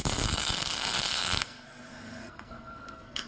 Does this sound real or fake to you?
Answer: fake